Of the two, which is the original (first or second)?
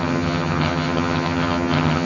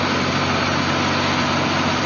second